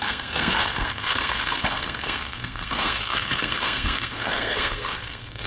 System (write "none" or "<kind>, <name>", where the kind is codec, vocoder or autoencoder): codec, SNAC